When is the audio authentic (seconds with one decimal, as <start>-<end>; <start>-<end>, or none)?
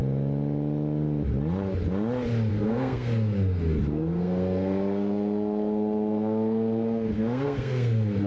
0.0-2.5